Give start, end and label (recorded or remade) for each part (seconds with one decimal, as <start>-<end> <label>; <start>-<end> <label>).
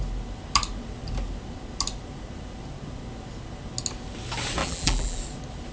0.0-4.6 recorded; 4.6-5.2 remade; 5.2-5.7 recorded